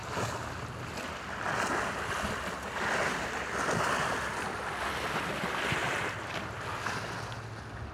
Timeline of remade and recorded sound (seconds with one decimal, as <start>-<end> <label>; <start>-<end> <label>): 0.0-7.9 recorded